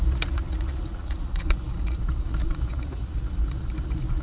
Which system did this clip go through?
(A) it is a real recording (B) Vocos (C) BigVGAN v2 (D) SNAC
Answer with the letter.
B